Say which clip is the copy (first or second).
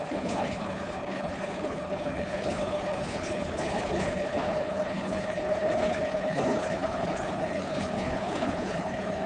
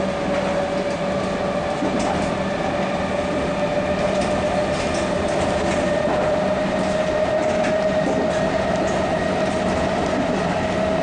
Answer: first